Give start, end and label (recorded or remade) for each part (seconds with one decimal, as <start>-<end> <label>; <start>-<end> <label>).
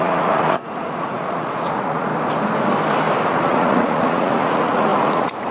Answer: 0.0-2.1 remade; 2.1-3.3 recorded; 3.3-5.5 remade